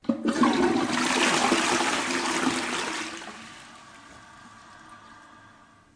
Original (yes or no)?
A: yes